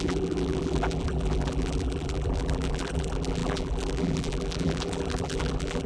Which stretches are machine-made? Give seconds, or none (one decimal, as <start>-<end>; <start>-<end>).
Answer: 0.0-5.9